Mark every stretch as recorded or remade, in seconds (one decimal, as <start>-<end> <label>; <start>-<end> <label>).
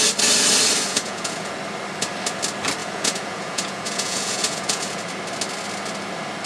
0.0-0.9 recorded; 0.9-1.6 remade; 1.6-2.8 recorded; 2.8-5.0 remade; 5.0-6.5 recorded